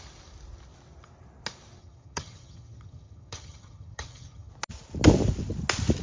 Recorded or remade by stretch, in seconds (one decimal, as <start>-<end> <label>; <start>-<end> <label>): 0.0-1.8 recorded; 1.8-4.5 remade; 4.5-6.0 recorded